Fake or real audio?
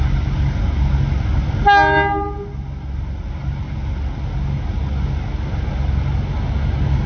real